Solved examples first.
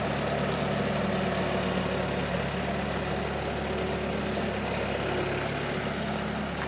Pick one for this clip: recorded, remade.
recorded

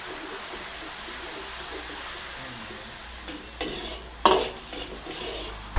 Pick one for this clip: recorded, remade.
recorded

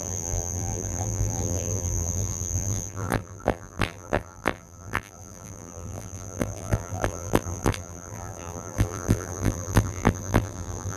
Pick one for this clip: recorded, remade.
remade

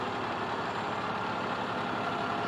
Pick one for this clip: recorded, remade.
recorded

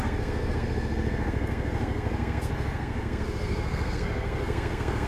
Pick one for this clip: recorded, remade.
remade